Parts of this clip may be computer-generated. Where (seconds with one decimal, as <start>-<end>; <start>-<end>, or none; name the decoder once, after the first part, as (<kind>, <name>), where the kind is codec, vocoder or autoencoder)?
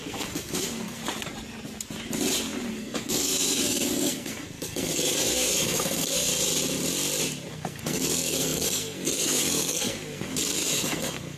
0.0-1.0 (codec, SNAC); 2.7-6.3; 7.5-11.4